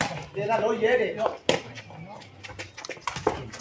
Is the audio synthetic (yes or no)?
no